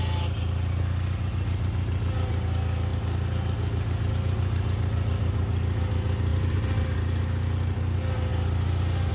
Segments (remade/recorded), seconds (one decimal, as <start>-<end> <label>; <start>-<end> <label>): 0.0-6.3 recorded; 6.3-7.0 remade; 7.0-9.1 recorded